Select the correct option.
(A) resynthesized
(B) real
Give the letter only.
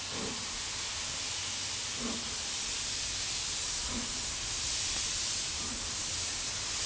B